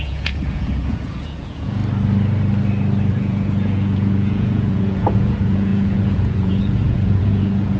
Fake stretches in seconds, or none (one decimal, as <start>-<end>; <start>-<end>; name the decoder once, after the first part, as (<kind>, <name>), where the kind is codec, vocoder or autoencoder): 0.0-1.8 (vocoder, Vocos); 3.1-7.8